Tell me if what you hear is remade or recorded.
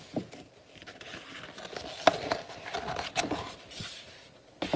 recorded